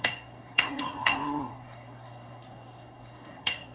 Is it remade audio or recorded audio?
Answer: remade